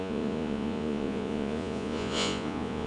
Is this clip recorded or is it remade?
remade